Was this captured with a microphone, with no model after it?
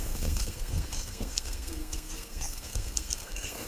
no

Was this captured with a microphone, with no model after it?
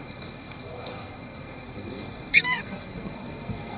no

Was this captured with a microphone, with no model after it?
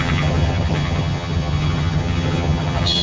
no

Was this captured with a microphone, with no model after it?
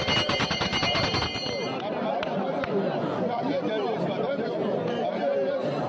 yes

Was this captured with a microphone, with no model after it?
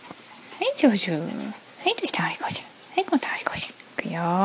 yes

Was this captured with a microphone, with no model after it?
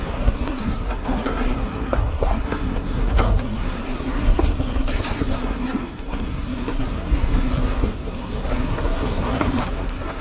no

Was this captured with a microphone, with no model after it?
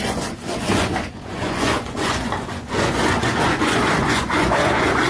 no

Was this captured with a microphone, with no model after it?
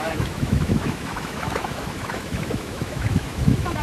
no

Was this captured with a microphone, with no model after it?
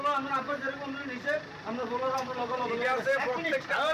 no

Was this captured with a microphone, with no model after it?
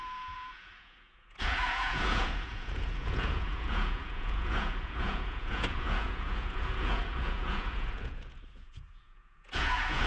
no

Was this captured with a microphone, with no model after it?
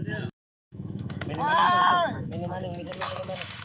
no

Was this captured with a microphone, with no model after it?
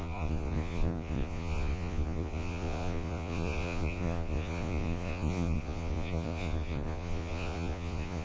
no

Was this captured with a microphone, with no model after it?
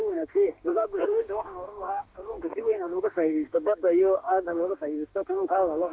no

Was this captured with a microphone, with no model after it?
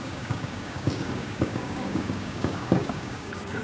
no